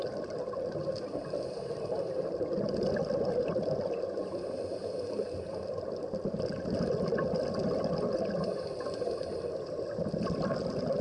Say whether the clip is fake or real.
fake